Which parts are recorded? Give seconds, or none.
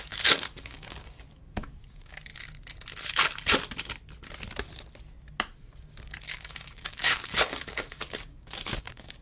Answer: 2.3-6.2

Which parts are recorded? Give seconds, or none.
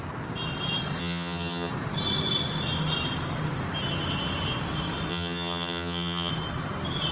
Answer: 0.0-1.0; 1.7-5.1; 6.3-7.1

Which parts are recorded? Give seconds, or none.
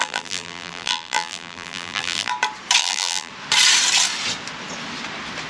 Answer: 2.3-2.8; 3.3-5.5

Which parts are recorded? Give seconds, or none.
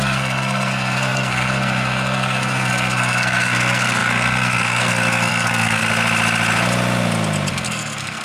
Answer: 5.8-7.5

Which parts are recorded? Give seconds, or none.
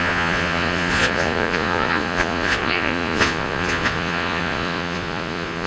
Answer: none